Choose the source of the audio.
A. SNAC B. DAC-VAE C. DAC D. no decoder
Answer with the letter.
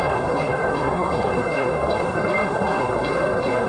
A